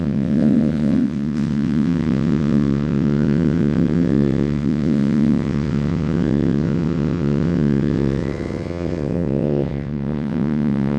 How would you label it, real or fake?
fake